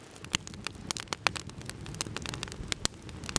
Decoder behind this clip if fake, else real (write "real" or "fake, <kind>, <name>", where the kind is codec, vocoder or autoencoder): real